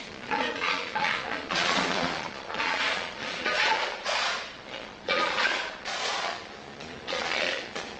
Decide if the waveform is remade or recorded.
remade